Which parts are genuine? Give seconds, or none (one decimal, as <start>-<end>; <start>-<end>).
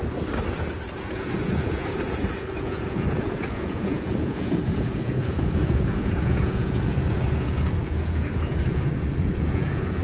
0.0-1.0